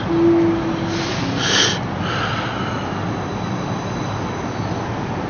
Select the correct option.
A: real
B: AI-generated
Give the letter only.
A